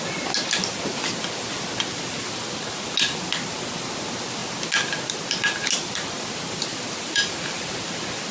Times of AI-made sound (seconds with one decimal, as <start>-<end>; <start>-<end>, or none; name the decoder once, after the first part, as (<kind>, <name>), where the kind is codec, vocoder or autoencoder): none